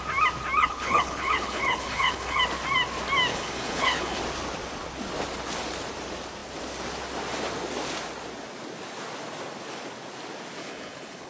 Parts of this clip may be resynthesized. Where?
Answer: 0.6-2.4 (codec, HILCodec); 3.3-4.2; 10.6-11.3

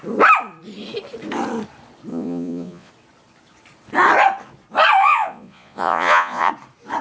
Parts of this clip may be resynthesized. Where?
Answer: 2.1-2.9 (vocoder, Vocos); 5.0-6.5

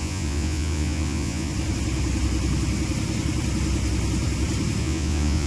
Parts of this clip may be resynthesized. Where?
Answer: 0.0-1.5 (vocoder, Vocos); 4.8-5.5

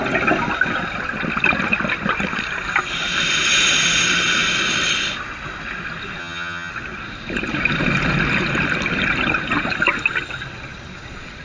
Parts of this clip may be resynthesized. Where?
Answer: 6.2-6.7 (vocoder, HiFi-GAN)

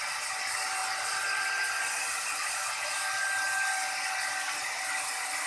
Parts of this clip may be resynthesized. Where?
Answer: none